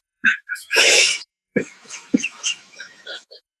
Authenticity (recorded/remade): remade